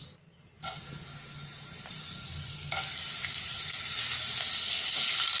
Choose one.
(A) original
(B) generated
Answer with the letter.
A